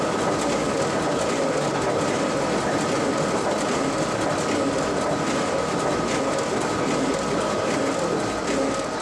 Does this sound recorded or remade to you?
recorded